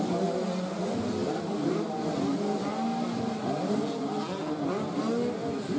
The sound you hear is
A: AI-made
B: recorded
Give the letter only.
B